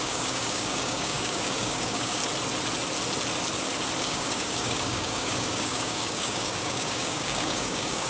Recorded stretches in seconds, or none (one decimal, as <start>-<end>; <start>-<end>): 2.2-4.0